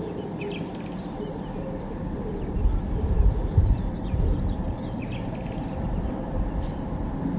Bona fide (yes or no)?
yes